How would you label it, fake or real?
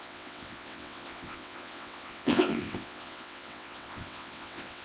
fake